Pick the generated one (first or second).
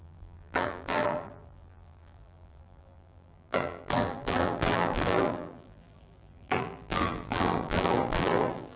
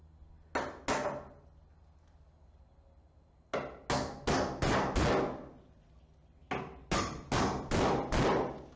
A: first